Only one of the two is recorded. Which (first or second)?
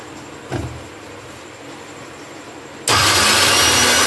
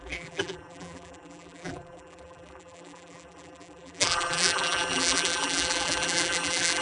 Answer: first